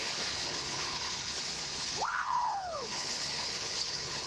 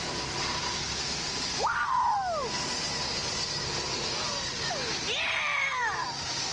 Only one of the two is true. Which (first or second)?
second